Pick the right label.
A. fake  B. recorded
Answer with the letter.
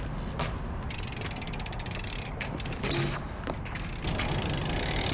B